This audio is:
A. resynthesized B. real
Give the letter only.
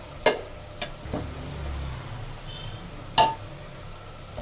B